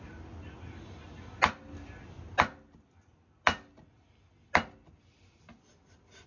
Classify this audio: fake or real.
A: real